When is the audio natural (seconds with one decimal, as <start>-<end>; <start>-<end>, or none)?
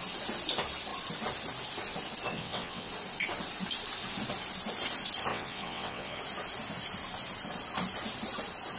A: 0.0-2.3; 2.9-5.3; 6.2-8.8